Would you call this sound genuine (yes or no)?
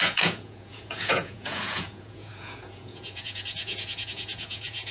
no